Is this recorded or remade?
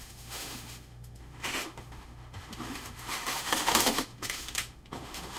remade